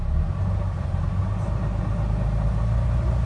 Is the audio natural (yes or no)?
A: yes